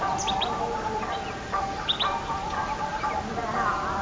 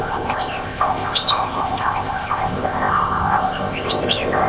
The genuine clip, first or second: first